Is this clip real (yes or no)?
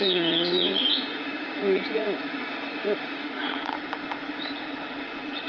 no